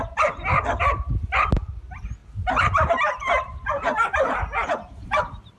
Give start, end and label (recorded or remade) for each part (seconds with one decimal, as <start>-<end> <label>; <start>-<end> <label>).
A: 0.0-2.2 recorded; 2.2-5.6 remade